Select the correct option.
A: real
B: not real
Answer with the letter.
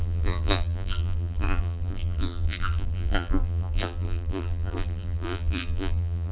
B